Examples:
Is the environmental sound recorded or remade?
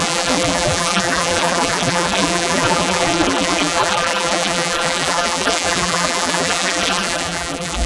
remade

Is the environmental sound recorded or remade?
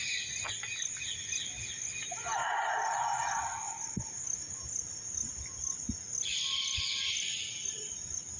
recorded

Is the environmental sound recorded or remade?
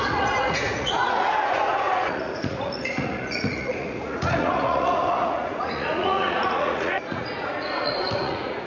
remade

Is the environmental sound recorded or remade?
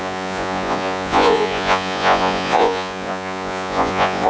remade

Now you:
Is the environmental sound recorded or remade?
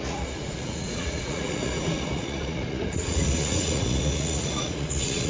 remade